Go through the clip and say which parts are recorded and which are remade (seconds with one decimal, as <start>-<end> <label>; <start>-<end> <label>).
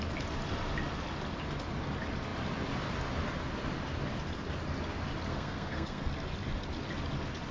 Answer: 0.0-5.3 recorded; 5.3-6.1 remade; 6.1-7.5 recorded